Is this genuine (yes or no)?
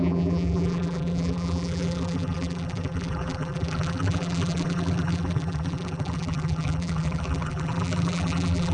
no